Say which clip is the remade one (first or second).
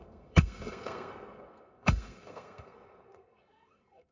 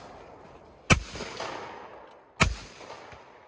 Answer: first